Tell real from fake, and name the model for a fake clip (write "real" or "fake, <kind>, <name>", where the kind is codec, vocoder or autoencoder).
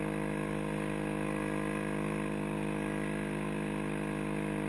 real